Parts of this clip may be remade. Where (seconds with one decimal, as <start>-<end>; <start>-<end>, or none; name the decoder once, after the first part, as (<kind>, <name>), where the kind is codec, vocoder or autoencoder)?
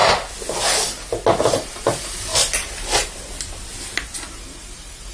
1.4-2.3 (vocoder, BigVGAN v2); 4.4-5.1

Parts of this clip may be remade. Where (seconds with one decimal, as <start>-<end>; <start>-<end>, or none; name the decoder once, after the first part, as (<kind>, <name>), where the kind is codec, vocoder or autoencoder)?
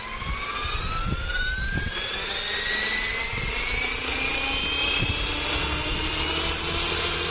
none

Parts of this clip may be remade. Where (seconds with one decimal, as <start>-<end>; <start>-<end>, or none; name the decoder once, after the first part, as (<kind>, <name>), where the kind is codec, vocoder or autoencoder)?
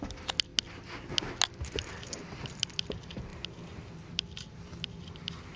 0.0-0.5 (vocoder, BigVGAN v2); 1.6-5.6